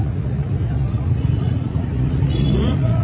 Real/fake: fake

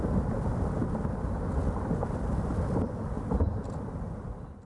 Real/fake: real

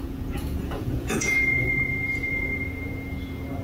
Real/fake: fake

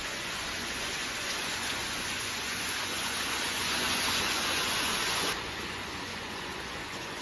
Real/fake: fake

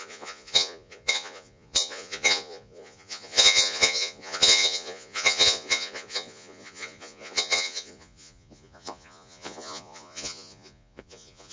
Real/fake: fake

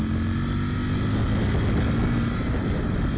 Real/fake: real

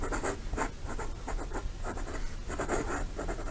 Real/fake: real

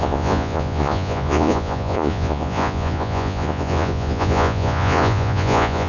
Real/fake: fake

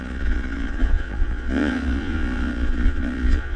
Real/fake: fake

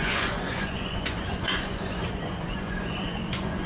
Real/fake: fake